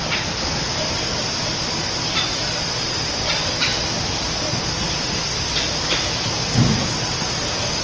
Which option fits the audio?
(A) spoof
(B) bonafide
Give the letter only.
B